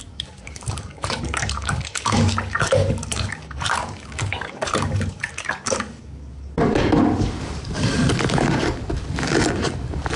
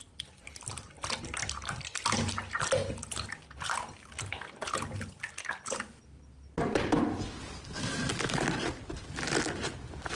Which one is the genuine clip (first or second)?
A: second